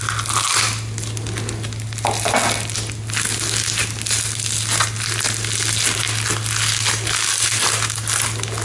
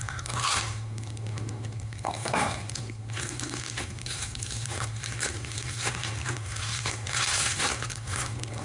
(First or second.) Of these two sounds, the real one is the first